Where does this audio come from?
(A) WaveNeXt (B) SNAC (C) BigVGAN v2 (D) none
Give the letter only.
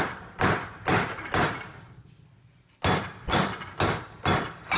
D